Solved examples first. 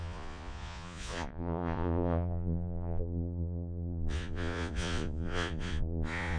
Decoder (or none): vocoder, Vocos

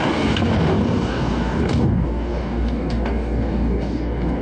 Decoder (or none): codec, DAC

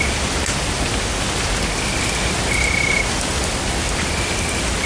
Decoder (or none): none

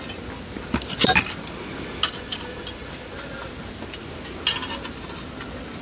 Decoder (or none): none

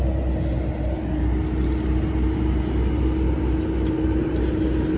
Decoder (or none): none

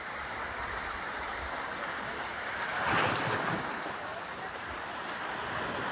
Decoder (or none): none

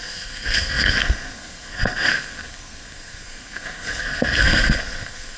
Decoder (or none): codec, SNAC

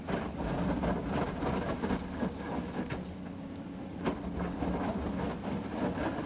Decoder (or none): none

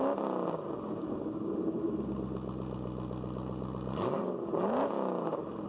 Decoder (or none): none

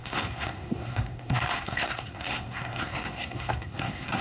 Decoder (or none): codec, SNAC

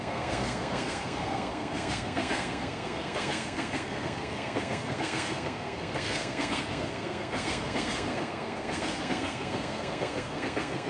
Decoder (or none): codec, SNAC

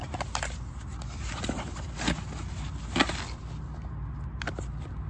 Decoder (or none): none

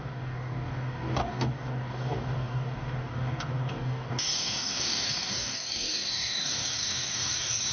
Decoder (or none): codec, DAC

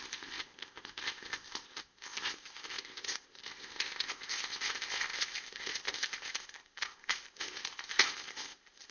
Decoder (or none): codec, ZipCodec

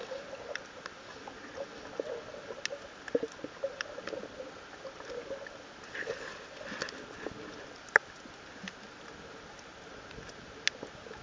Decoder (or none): none